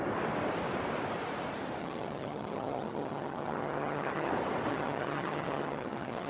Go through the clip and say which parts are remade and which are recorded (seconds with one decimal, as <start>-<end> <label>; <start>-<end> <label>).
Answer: 0.0-1.8 recorded; 1.8-4.3 remade; 4.3-4.7 recorded; 4.7-6.3 remade